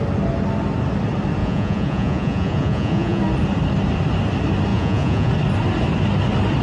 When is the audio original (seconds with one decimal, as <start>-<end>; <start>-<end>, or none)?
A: 0.0-1.4; 3.2-4.7; 5.3-6.6